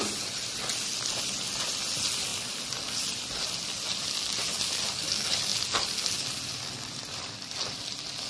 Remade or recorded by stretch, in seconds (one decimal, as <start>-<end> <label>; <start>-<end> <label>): 0.0-8.3 recorded